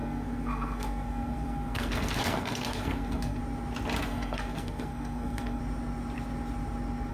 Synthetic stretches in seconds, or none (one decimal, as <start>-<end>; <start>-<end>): 0.0-3.4; 4.0-5.6